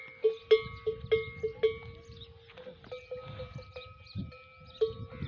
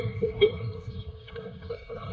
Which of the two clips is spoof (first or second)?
second